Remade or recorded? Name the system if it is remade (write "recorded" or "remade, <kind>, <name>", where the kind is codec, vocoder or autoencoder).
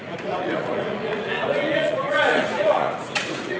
remade, vocoder, Vocos